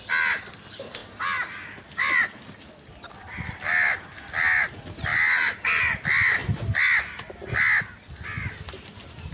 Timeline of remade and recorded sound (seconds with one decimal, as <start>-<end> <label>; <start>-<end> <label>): 0.0-9.3 recorded